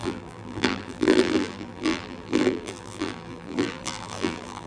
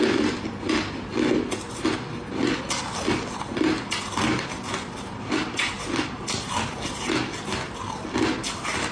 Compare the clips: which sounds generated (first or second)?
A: first